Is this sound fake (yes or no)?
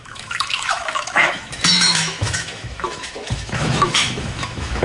yes